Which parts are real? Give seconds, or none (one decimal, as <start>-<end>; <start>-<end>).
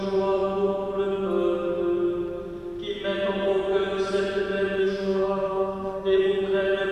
0.0-4.8; 6.2-6.9